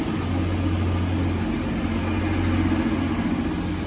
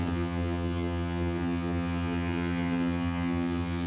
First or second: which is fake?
second